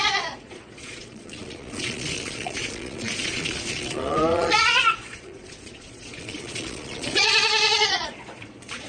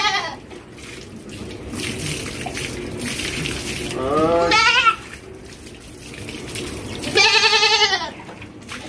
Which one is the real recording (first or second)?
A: second